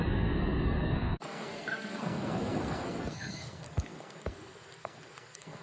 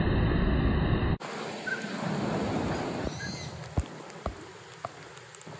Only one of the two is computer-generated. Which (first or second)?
first